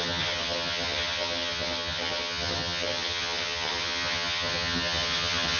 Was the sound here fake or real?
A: fake